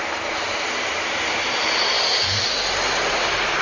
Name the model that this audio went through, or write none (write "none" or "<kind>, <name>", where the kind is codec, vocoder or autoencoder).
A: none